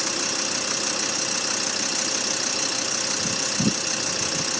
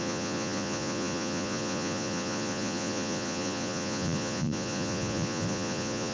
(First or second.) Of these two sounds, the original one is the first